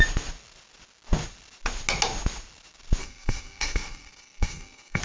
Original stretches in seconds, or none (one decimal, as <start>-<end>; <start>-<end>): 0.0-3.0